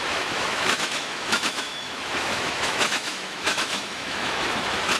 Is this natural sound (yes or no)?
no